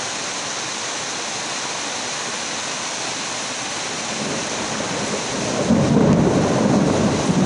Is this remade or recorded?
recorded